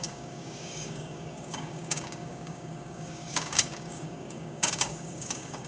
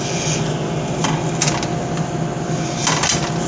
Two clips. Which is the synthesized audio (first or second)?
first